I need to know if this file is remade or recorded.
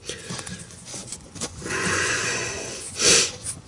remade